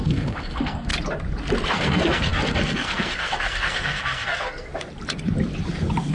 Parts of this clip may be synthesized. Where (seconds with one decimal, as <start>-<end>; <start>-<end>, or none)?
0.0-0.9; 1.7-4.7